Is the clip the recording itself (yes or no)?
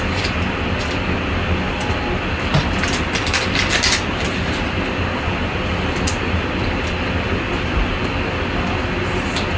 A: yes